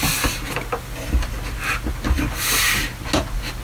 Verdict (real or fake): real